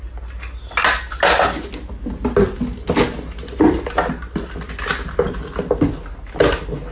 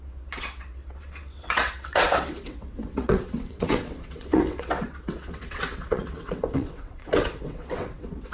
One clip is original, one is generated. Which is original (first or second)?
first